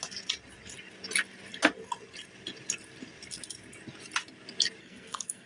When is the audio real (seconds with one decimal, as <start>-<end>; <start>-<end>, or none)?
0.0-4.8